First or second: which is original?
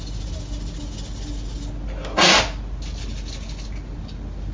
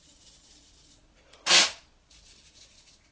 first